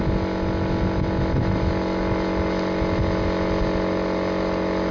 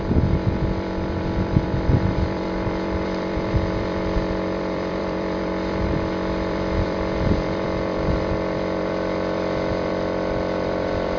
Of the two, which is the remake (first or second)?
second